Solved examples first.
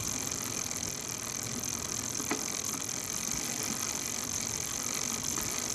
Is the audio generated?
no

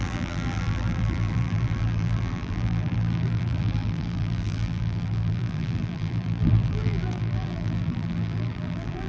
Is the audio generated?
yes